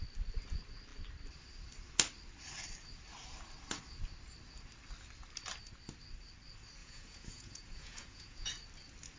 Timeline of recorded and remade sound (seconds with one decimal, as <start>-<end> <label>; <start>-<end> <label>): 0.0-6.8 recorded; 6.8-8.5 remade; 8.5-9.2 recorded